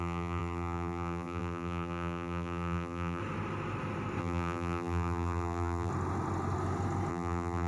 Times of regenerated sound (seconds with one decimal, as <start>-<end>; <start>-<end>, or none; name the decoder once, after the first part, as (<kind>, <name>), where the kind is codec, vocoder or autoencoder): 0.0-3.2 (vocoder, BigVGAN v2); 4.2-5.9; 7.1-7.7